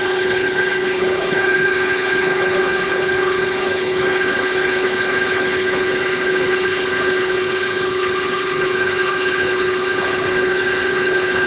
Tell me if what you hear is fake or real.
fake